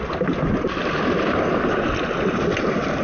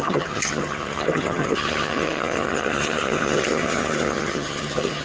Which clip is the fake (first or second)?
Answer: second